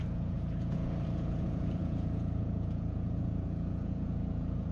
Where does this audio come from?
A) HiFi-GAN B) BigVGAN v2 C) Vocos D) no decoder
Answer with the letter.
C